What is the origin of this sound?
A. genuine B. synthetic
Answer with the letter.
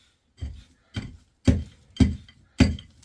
A